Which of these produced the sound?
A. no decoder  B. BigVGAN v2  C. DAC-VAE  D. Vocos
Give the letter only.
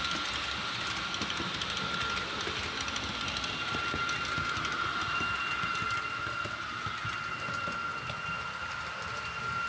A